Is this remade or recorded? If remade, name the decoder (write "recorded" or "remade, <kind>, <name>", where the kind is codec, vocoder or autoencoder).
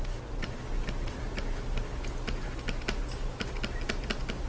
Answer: recorded